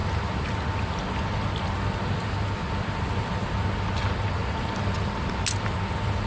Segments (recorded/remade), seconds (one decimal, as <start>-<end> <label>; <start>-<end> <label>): 0.0-6.3 recorded